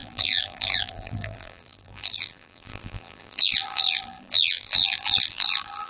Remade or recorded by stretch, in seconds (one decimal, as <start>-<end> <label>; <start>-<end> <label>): 0.0-5.9 remade